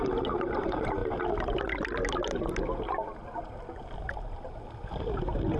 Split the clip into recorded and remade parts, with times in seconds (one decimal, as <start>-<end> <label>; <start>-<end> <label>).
0.0-5.6 recorded